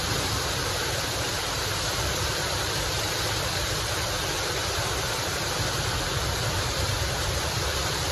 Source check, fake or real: fake